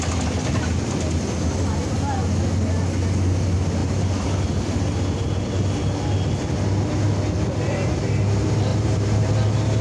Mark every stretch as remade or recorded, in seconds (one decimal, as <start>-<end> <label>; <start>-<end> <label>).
0.0-8.7 recorded; 8.7-9.3 remade; 9.3-9.8 recorded